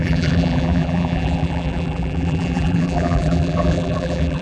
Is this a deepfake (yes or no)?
yes